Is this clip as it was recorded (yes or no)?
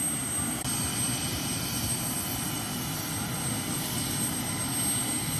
yes